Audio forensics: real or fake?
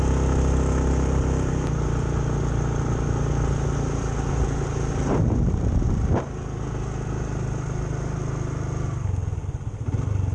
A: real